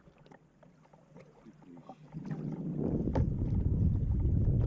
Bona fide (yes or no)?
yes